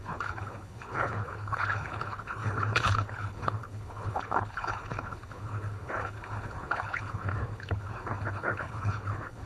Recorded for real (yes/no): no